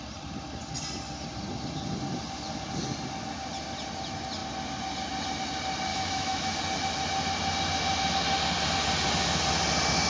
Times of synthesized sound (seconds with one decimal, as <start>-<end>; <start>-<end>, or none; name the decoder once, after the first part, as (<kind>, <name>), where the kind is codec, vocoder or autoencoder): 5.9-6.6 (autoencoder, DAC-VAE)